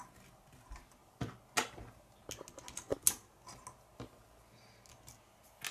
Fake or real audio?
real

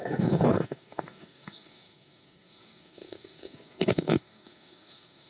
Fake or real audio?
fake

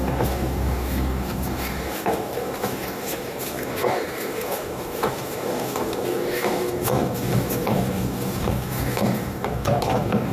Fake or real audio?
fake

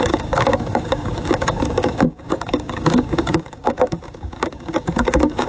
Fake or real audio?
fake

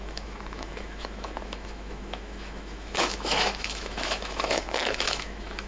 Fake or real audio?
fake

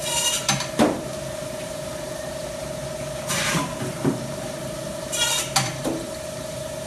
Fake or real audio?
fake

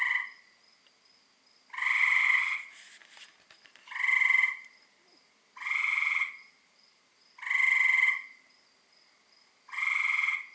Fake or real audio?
real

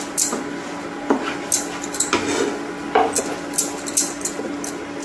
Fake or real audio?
real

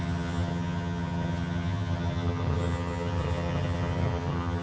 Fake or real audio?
fake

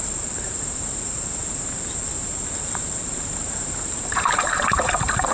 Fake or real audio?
fake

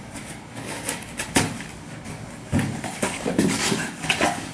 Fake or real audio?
fake